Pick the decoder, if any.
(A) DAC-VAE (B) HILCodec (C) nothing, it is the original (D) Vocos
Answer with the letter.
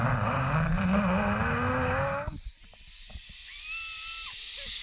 C